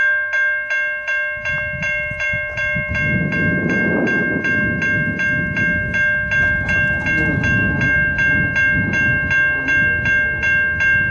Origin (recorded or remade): recorded